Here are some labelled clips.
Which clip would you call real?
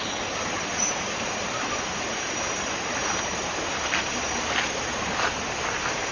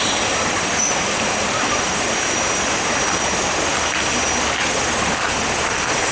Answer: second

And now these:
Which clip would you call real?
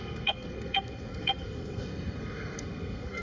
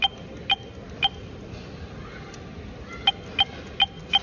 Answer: second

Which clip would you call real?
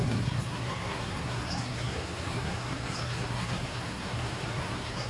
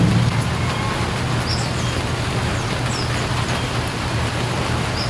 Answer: second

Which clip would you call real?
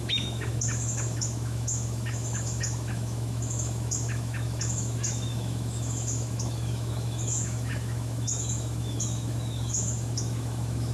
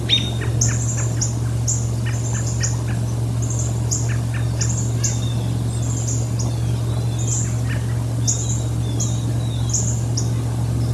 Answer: second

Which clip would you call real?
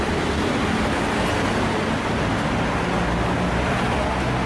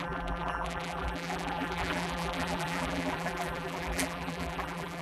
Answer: first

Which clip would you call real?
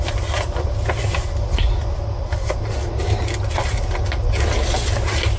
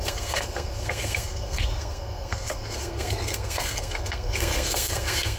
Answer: first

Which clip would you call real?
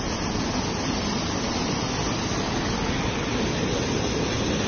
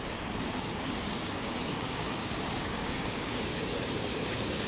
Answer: first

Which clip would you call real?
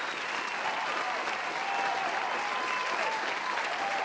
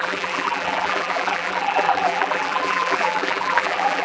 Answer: first